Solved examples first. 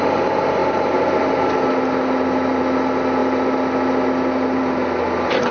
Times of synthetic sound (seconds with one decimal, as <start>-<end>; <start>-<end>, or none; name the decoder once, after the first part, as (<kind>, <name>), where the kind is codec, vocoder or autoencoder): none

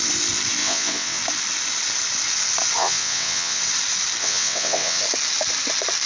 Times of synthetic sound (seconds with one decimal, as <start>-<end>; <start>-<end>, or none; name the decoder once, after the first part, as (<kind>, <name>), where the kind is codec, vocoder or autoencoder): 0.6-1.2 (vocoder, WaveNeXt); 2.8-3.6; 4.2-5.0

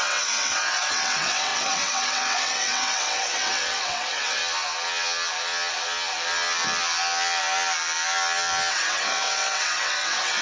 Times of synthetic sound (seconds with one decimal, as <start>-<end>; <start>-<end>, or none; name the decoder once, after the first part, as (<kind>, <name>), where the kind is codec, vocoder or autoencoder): 0.0-4.4 (vocoder, WaveNeXt); 8.7-10.4

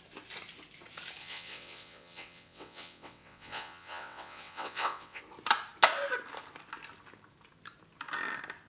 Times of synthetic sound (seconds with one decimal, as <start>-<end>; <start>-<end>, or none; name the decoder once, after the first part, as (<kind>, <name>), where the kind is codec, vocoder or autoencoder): 1.2-5.2 (vocoder, WaveNeXt)

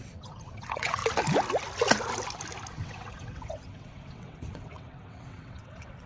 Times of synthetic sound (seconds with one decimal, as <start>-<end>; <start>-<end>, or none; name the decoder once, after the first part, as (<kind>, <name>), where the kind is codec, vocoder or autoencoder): 0.0-1.0 (vocoder, WaveNeXt); 2.7-6.1